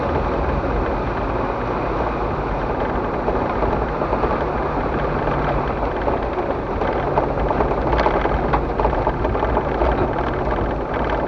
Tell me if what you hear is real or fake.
real